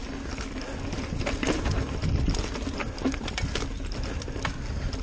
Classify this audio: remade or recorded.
recorded